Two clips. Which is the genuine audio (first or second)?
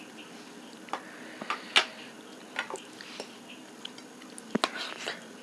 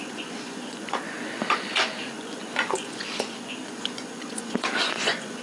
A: first